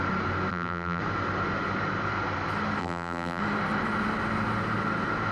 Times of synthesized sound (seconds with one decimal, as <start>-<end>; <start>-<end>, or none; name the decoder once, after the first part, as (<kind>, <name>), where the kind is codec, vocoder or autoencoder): 0.5-1.0 (vocoder, BigVGAN v2); 2.8-3.4